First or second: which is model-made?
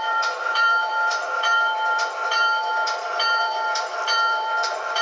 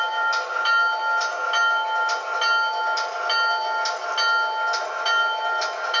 first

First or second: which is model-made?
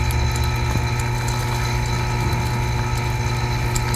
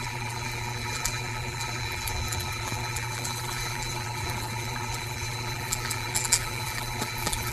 second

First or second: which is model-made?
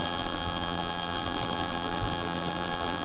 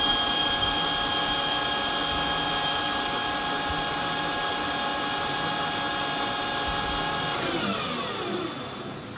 first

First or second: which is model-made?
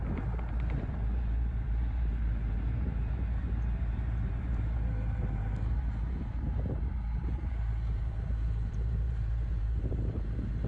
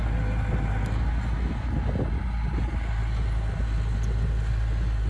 first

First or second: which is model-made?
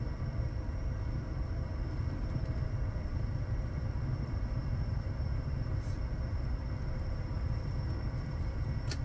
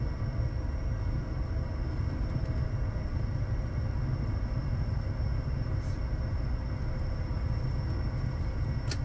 first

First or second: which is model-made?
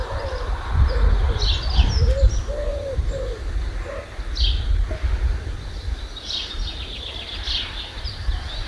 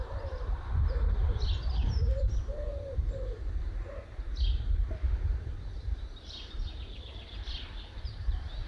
second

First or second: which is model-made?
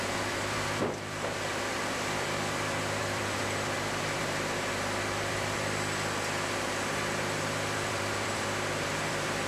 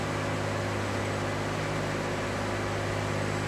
first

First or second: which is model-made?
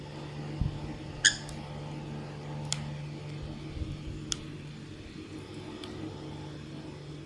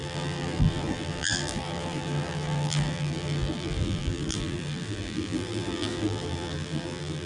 second